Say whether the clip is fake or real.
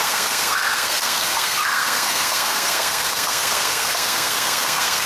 fake